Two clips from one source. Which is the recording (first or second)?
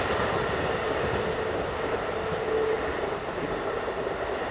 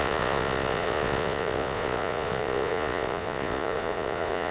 first